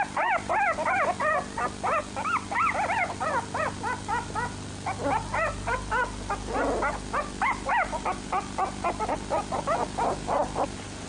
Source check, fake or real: real